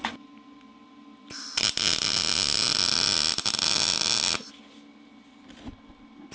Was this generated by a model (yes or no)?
no